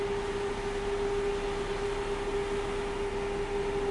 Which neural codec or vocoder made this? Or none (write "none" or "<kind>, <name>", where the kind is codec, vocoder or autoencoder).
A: none